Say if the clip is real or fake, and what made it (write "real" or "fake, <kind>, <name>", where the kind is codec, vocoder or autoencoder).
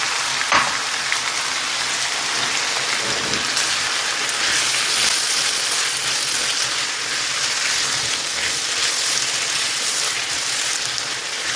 real